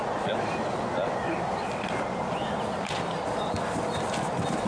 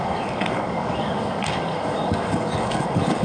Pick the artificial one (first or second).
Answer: second